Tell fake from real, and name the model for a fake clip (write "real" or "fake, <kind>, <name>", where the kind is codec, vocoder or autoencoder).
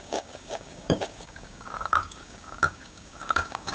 fake, codec, DAC